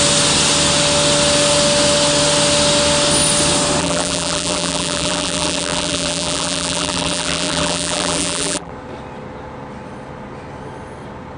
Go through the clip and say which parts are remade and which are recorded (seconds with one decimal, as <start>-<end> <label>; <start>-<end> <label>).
0.0-3.8 recorded; 3.8-8.7 remade; 8.7-11.4 recorded